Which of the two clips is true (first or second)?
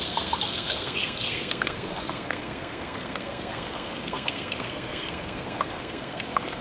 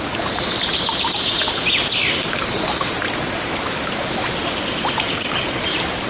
second